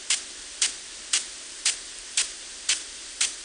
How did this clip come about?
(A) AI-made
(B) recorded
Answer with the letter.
B